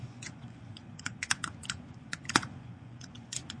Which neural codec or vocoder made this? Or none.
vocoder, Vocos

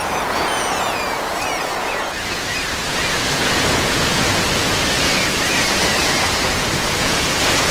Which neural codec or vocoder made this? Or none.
vocoder, Vocos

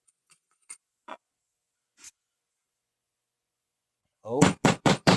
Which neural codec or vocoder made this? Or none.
vocoder, Vocos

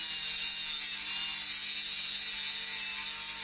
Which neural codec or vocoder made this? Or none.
none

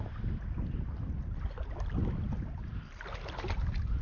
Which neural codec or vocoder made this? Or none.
none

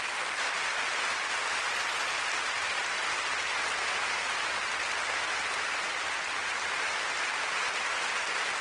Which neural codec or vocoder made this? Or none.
none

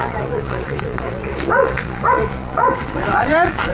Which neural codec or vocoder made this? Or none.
vocoder, Vocos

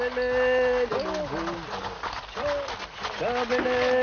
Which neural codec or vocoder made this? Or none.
none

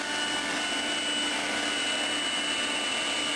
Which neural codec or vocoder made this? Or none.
none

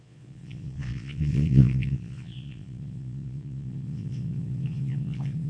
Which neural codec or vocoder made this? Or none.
vocoder, Vocos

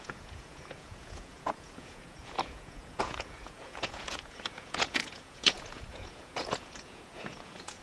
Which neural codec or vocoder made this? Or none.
vocoder, Vocos